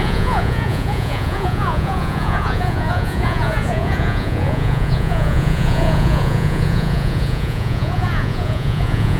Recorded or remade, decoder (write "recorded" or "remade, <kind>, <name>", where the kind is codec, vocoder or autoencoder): remade, vocoder, Vocos